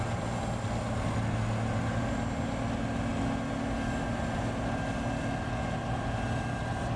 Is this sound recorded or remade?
recorded